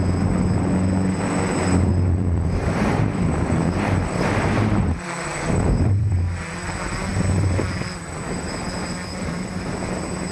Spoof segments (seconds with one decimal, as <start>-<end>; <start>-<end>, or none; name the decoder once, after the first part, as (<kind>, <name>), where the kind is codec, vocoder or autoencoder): 1.9-6.1 (vocoder, BigVGAN v2); 9.0-9.7

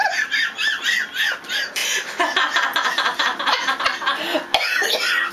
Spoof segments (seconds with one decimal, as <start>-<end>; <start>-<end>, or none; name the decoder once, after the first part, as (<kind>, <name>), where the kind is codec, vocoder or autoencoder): 0.0-0.8 (vocoder, BigVGAN v2)